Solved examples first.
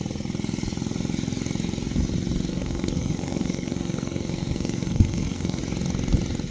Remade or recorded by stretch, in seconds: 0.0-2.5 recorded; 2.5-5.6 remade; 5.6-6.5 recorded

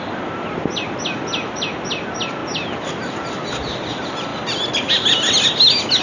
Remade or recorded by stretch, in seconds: 0.0-6.0 recorded

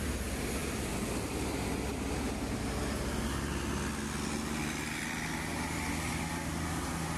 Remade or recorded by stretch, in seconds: 0.0-7.2 recorded

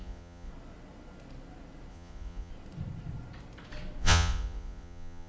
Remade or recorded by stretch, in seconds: 0.0-0.5 remade; 0.5-1.9 recorded; 1.9-2.5 remade; 2.5-4.0 recorded; 4.0-5.3 remade

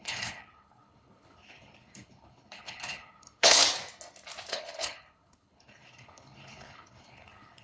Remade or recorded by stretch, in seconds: 0.0-3.6 remade; 3.6-4.5 recorded; 4.5-7.6 remade